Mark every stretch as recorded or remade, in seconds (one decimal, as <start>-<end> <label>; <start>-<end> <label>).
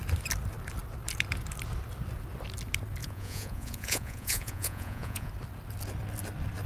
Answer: 0.0-3.0 recorded; 3.0-5.3 remade; 5.3-6.7 recorded